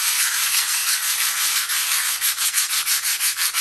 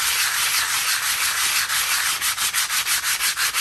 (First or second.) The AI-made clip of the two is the first